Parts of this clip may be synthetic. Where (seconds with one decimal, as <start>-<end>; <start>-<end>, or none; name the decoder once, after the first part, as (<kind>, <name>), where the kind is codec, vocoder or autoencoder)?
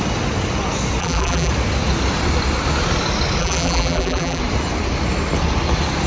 1.0-1.5 (vocoder, BigVGAN v2); 3.4-4.4